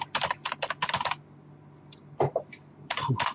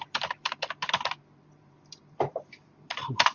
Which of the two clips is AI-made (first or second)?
second